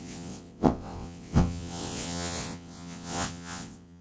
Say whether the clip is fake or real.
fake